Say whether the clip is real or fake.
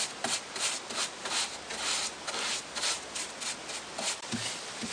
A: real